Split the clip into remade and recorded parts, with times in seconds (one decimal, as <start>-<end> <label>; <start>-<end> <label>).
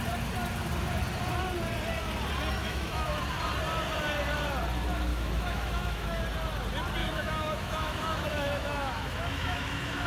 0.0-2.6 recorded; 2.6-3.2 remade; 3.2-5.1 recorded; 5.1-6.2 remade; 6.2-7.0 recorded; 7.0-10.1 remade